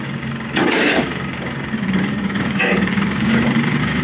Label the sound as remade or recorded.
remade